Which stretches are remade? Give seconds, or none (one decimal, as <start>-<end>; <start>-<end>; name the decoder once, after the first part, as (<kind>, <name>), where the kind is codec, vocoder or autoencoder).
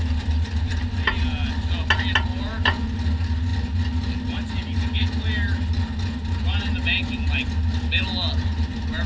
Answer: none